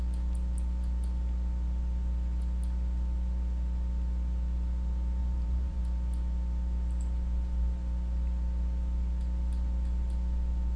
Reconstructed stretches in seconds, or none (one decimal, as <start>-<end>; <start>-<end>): 5.2-5.8